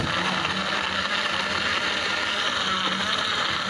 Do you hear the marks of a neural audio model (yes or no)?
no